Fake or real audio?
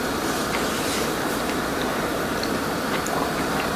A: fake